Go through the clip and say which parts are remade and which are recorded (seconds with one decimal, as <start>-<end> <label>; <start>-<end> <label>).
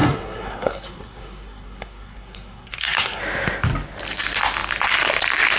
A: 0.0-3.2 remade; 3.2-5.6 recorded